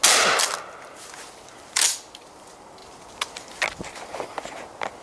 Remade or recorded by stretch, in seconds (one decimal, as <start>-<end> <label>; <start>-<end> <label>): 0.0-5.0 recorded